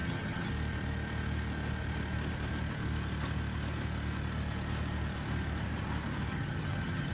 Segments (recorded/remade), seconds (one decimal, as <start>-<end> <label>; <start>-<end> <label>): 0.0-0.5 remade; 0.5-6.3 recorded; 6.3-7.1 remade